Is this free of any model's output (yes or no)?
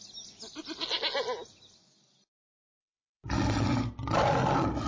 yes